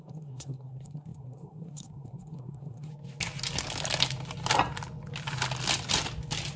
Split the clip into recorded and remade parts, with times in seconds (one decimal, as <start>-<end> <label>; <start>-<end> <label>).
0.0-2.9 remade; 2.9-6.6 recorded